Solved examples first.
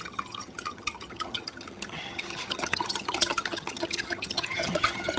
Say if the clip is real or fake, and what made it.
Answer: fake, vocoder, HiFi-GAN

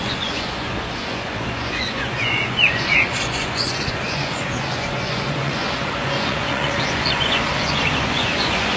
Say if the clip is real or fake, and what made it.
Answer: fake, vocoder, Vocos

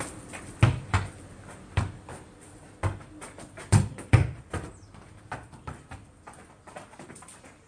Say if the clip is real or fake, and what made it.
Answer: real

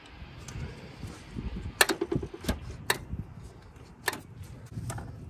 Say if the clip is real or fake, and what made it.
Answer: real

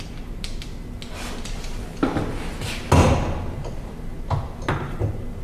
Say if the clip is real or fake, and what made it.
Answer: real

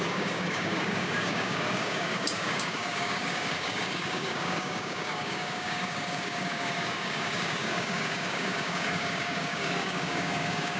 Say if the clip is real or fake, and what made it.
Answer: fake, codec, DAC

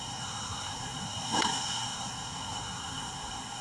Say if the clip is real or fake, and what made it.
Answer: fake, codec, SNAC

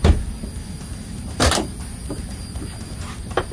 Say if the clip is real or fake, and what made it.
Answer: fake, vocoder, BigVGAN v2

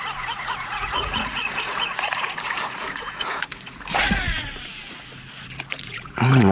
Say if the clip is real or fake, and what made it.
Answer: fake, vocoder, Vocos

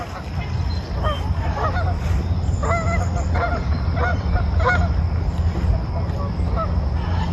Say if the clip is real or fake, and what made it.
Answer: real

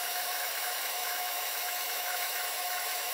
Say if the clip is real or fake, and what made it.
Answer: fake, autoencoder, DAC-VAE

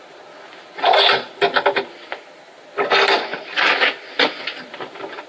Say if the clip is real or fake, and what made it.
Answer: real